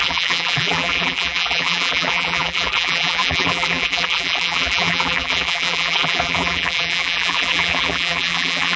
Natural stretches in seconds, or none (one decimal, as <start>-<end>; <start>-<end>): none